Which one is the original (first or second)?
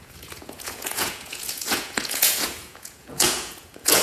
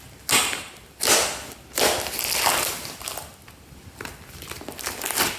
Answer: second